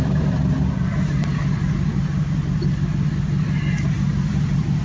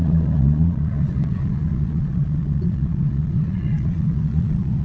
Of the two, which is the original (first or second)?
first